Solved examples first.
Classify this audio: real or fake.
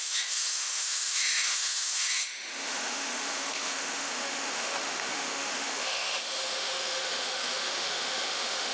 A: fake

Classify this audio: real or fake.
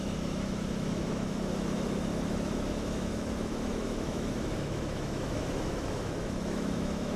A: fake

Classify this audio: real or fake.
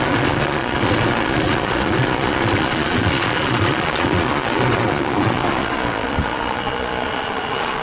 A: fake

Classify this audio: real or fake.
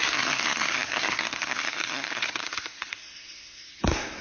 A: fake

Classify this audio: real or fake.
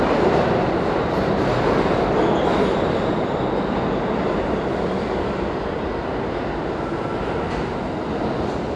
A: real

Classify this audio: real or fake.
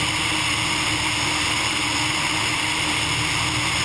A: real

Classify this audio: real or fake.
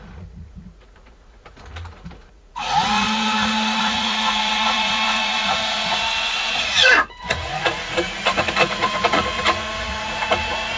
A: fake